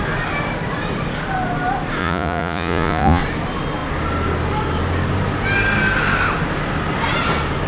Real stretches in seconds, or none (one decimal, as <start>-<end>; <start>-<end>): 0.0-2.0; 3.2-7.7